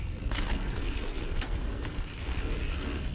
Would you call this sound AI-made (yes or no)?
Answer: yes